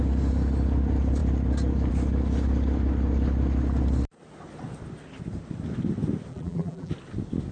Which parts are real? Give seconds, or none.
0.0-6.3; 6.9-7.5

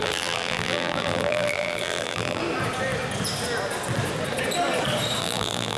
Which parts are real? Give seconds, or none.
2.4-5.2

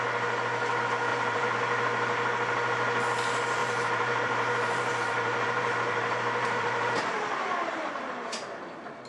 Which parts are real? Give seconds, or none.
0.0-1.1; 1.6-3.6; 7.9-9.1